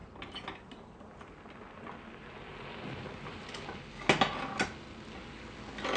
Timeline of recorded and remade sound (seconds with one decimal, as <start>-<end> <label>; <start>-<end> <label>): 0.0-6.0 recorded